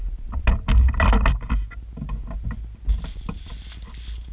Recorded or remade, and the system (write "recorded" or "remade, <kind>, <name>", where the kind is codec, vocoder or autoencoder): recorded